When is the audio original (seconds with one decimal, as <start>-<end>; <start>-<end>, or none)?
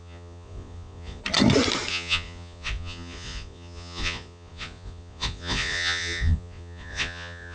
1.2-1.9